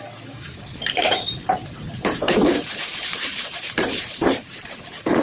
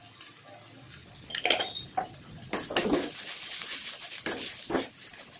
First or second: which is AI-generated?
first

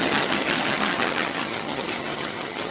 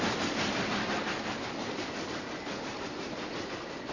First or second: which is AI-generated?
first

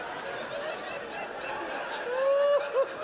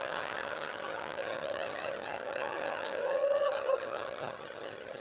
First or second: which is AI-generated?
second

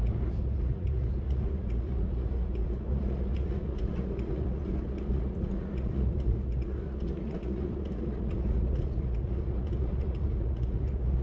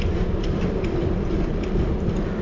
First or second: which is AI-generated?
first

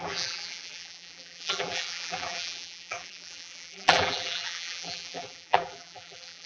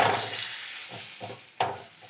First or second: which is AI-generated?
first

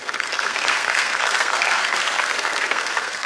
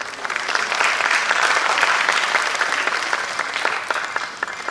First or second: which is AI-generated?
first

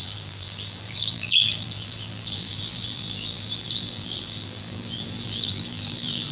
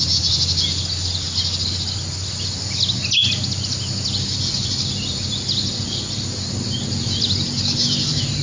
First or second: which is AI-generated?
first